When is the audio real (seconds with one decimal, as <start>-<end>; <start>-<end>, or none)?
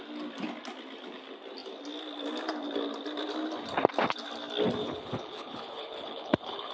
0.0-4.8